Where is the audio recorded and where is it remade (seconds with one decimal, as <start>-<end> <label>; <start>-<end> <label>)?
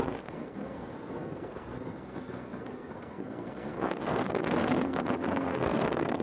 0.0-6.2 remade